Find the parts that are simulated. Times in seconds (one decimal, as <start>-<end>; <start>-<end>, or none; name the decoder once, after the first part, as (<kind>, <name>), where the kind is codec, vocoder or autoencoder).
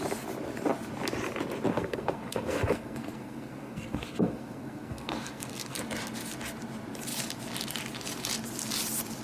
1.7-5.8 (codec, SNAC)